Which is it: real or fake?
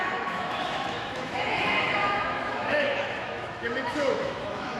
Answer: fake